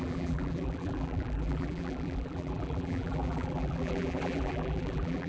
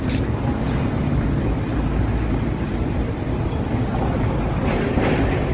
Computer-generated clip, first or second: first